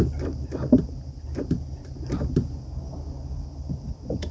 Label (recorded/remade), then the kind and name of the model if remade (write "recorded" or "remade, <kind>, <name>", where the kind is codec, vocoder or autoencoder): recorded